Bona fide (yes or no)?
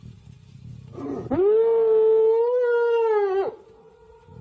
yes